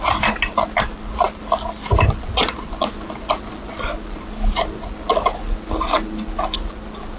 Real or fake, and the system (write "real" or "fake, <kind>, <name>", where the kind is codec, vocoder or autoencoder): real